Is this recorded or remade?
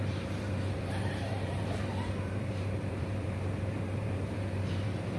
remade